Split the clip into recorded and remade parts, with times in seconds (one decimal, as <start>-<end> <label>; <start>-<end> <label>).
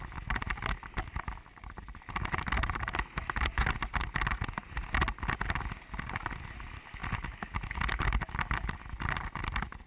0.0-9.9 recorded